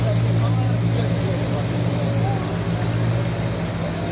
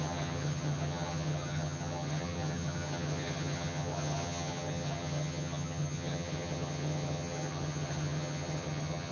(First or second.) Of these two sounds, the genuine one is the first